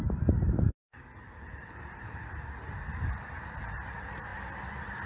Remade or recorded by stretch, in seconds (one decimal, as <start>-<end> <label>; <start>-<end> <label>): 0.0-5.1 recorded